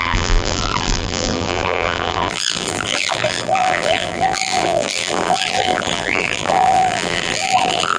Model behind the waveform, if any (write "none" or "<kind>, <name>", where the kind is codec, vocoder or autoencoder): vocoder, BigVGAN v2